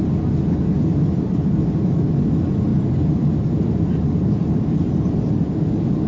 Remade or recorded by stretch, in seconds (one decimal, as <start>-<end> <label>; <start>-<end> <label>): 0.0-0.9 recorded; 0.9-2.0 remade; 2.0-2.7 recorded; 2.7-5.6 remade; 5.6-6.1 recorded